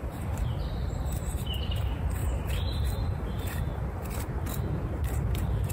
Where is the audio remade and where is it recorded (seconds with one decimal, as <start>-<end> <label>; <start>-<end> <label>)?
0.0-2.2 remade; 2.2-3.1 recorded; 3.1-3.7 remade; 3.7-5.3 recorded; 5.3-5.7 remade